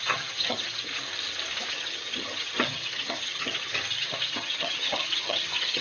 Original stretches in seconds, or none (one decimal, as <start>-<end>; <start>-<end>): 0.9-1.7